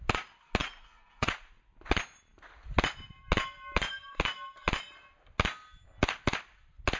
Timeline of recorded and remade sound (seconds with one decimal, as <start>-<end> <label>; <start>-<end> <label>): 0.0-0.6 recorded; 0.6-1.6 remade; 1.6-7.0 recorded